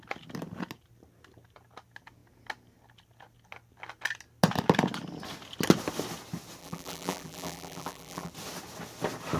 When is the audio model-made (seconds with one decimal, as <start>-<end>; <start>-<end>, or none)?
6.6-8.3